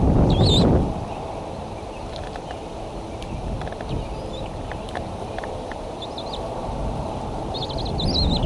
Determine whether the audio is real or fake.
real